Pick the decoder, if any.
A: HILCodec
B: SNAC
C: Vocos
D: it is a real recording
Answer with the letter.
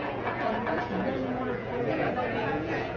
C